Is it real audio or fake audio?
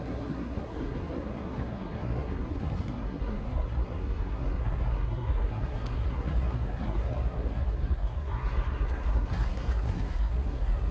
fake